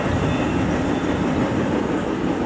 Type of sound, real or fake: real